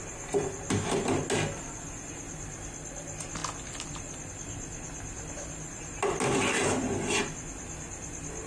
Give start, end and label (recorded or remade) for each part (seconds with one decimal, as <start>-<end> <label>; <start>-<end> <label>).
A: 0.0-8.5 recorded